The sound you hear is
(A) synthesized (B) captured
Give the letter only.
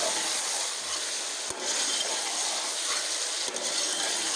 B